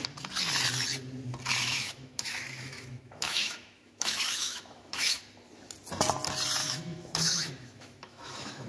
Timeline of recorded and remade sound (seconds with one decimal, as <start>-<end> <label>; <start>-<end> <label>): 0.0-1.6 recorded; 1.6-5.2 remade; 5.2-6.6 recorded; 6.6-8.7 remade